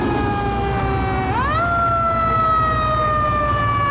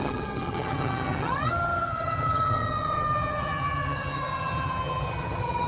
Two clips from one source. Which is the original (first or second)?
first